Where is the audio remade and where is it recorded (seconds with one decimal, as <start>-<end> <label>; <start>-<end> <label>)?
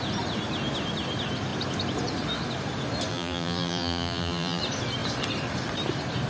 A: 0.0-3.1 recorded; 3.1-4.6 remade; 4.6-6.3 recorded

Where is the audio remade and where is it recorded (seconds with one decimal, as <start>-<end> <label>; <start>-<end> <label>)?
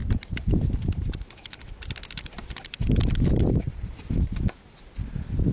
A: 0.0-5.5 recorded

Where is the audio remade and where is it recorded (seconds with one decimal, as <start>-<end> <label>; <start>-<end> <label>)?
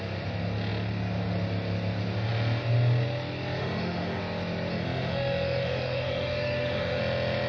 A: 0.0-3.6 recorded; 3.6-4.2 remade; 4.2-4.7 recorded; 4.7-7.0 remade; 7.0-7.5 recorded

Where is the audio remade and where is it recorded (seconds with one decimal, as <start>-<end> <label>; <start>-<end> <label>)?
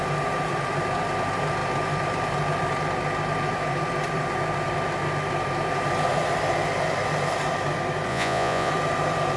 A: 0.0-8.1 recorded; 8.1-8.7 remade; 8.7-9.4 recorded